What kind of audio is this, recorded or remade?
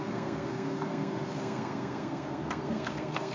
remade